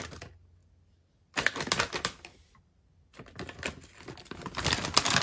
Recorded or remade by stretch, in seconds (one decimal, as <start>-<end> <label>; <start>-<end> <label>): 0.0-5.2 recorded

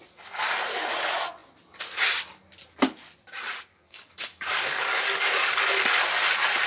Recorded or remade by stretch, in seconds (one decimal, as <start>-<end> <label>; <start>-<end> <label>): 0.0-3.7 recorded; 3.7-5.6 remade; 5.6-6.7 recorded

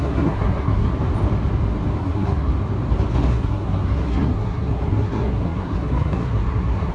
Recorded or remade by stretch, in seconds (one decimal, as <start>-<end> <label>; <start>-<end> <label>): 0.0-0.9 remade; 0.9-2.0 recorded; 2.0-2.5 remade; 2.5-3.3 recorded; 3.3-6.9 remade